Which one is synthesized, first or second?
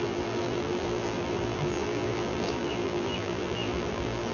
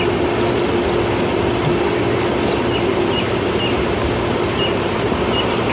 first